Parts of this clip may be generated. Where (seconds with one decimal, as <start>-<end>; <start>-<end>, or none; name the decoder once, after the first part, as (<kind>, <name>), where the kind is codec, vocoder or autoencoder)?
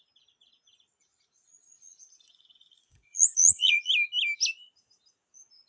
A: 1.1-3.9 (vocoder, Vocos)